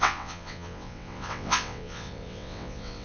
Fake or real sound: fake